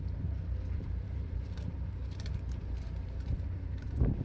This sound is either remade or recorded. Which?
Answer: remade